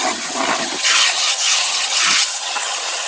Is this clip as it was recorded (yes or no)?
no